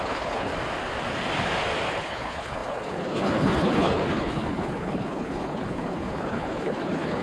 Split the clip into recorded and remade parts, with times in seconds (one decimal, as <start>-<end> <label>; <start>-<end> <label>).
0.0-0.5 remade; 0.5-1.9 recorded; 1.9-7.2 remade